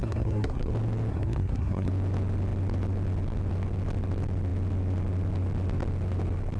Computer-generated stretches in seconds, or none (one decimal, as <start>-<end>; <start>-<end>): 0.0-0.7; 1.1-1.9